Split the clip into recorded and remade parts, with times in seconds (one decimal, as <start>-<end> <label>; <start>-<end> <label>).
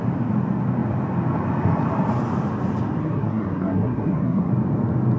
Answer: 0.0-3.0 recorded; 3.0-4.5 remade; 4.5-5.2 recorded